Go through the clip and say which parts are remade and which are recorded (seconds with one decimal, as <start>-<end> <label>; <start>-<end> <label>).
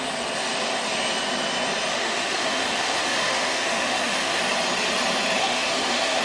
0.0-1.9 recorded; 1.9-4.4 remade; 4.4-5.4 recorded; 5.4-6.2 remade